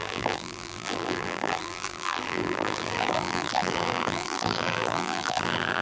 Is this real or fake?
fake